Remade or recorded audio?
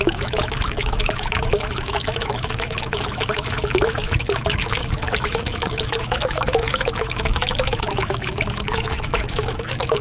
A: remade